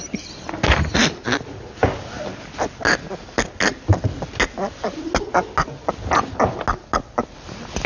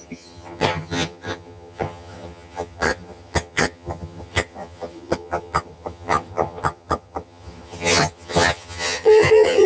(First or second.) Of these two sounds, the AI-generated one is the second